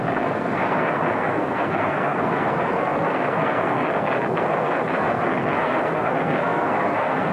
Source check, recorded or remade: remade